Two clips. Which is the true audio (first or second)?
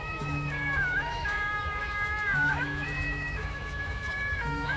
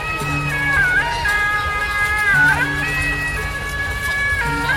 second